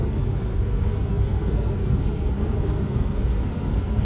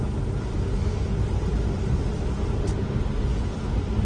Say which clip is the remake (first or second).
first